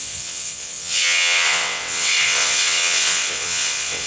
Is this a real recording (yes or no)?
no